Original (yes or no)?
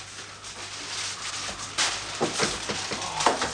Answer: yes